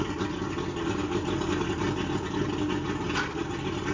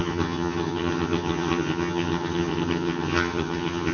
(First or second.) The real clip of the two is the first